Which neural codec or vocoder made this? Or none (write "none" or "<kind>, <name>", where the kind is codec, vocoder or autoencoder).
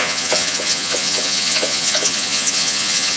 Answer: vocoder, Vocos